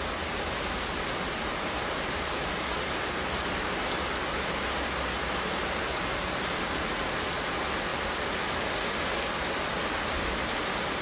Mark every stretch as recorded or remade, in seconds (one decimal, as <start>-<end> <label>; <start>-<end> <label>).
0.0-11.0 recorded